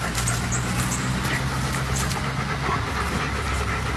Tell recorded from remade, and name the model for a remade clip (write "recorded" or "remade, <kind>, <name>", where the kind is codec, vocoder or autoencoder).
recorded